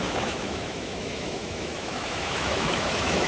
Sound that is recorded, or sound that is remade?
remade